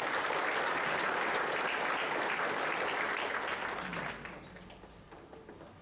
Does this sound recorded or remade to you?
recorded